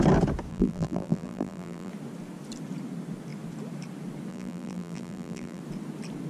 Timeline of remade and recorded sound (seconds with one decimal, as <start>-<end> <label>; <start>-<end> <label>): 0.0-0.5 recorded; 0.5-1.9 remade; 1.9-4.3 recorded; 4.3-5.6 remade; 5.6-6.3 recorded